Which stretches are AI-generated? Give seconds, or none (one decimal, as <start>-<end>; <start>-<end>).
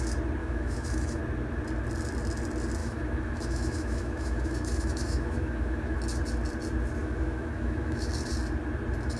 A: 0.4-1.2; 2.8-6.0; 7.0-8.1